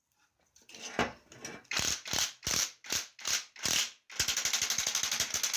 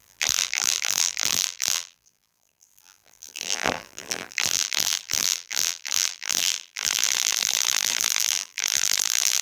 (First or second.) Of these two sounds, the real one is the first